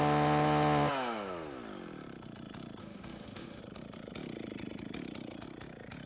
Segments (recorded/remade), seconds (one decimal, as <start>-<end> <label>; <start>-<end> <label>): 0.0-2.8 recorded; 2.8-3.6 remade; 3.6-6.1 recorded